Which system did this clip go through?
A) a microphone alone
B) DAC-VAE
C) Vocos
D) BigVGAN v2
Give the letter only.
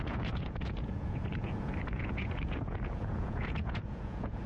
C